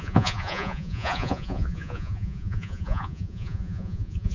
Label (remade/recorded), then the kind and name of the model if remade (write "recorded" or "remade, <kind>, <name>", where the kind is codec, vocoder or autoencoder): remade, vocoder, Vocos